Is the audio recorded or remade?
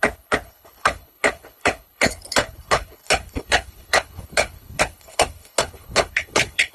remade